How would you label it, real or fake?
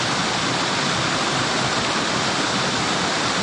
real